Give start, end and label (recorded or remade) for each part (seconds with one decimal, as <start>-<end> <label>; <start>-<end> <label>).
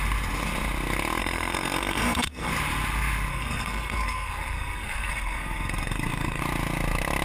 0.0-1.2 recorded; 1.2-2.5 remade; 2.5-3.3 recorded; 3.3-6.4 remade; 6.4-7.2 recorded